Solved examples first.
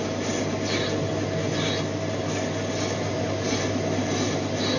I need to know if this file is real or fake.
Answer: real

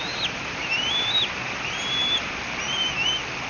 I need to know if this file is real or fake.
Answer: real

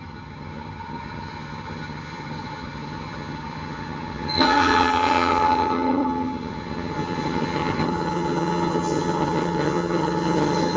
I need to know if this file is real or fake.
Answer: fake